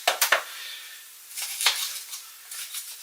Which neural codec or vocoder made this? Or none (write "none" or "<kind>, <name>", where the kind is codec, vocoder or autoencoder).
vocoder, BigVGAN v2